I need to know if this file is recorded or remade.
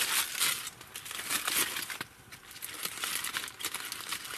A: recorded